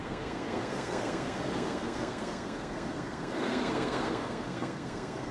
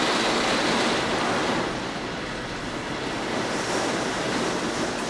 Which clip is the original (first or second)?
second